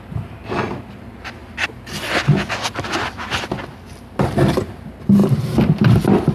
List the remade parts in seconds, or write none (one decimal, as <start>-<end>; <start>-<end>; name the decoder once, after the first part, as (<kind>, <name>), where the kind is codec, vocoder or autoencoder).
5.2-6.3 (vocoder, BigVGAN v2)